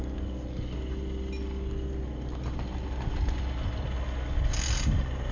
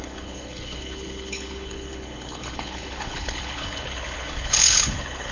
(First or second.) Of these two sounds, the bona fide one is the first